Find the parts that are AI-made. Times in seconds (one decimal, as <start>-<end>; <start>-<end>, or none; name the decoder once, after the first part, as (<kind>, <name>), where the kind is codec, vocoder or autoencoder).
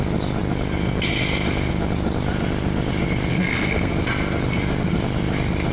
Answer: 3.3-3.9 (codec, SNAC)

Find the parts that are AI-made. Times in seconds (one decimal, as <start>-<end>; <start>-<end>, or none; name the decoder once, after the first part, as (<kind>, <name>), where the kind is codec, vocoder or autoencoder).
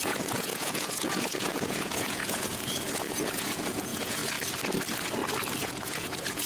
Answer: 0.0-4.2 (vocoder, Vocos); 5.6-6.5